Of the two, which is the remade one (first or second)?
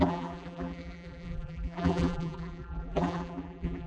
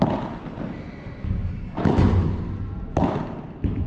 first